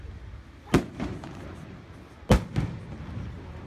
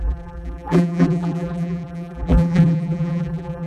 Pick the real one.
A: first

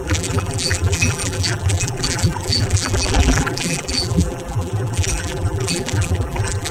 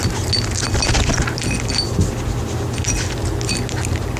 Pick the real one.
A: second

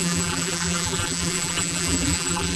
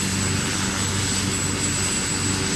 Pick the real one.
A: second